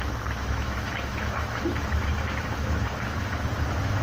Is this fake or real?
fake